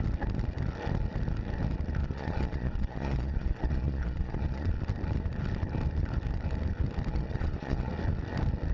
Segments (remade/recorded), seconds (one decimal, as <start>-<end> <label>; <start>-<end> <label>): 0.0-2.0 recorded; 2.0-4.7 remade; 4.7-7.1 recorded; 7.1-7.9 remade; 7.9-8.7 recorded